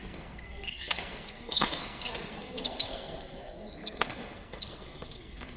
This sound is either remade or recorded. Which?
remade